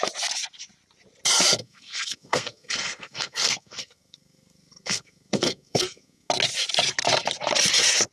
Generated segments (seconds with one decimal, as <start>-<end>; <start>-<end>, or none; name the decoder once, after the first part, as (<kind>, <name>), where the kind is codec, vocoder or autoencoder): 1.6-6.3 (codec, SNAC)